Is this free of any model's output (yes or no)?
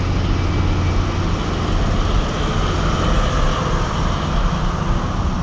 yes